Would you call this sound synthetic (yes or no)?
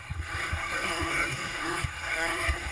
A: yes